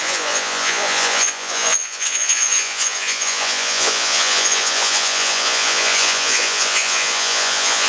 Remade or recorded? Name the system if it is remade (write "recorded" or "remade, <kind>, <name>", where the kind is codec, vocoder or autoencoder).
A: remade, vocoder, Vocos